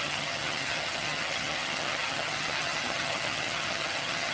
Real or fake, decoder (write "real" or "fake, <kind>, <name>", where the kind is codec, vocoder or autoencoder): fake, vocoder, HiFi-GAN